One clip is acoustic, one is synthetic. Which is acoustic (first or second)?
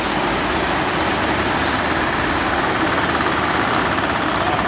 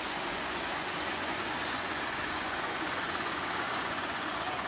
first